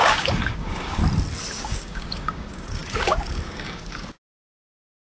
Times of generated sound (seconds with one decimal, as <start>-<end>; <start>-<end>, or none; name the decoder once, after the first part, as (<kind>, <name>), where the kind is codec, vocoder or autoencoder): 0.0-1.0 (codec, DAC); 1.6-5.0